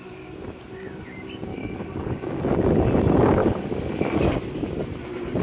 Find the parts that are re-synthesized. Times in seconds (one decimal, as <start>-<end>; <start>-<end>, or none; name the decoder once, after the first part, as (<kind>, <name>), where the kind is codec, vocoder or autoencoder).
1.5-2.4 (codec, DAC); 3.4-4.3